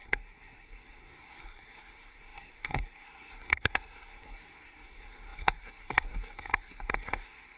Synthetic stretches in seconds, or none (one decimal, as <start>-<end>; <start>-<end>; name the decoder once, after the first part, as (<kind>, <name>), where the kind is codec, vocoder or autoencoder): 0.0-7.6 (codec, SNAC)